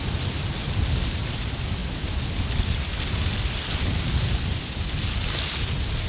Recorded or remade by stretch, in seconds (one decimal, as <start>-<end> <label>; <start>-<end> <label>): 0.0-6.1 recorded